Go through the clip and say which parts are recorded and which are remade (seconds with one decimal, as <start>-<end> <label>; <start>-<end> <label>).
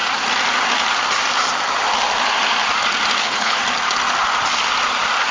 0.0-3.2 recorded; 3.2-3.6 remade; 3.6-5.3 recorded